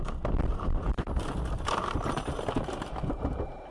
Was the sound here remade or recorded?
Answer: remade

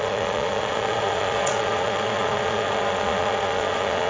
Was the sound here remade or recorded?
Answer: remade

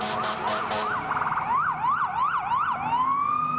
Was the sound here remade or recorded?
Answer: recorded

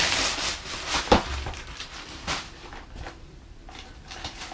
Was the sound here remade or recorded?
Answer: remade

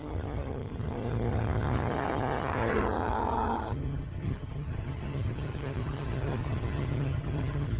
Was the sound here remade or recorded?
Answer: remade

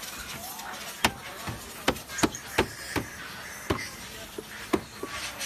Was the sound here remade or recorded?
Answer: recorded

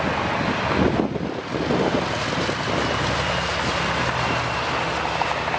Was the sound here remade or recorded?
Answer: recorded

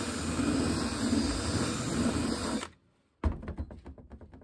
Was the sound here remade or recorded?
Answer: recorded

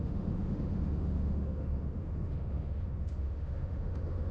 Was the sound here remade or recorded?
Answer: remade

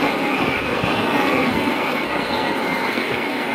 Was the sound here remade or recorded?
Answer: remade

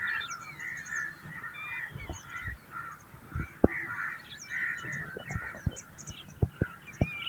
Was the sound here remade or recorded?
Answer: recorded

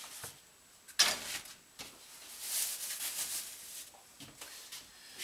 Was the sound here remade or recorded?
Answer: recorded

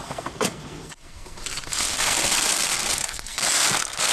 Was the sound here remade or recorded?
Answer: remade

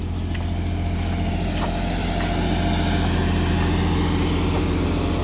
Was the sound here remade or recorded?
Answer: recorded